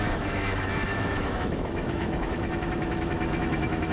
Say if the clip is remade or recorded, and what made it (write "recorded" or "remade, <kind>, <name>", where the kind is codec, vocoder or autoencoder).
remade, autoencoder, DAC-VAE